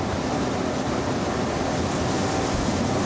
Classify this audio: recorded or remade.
recorded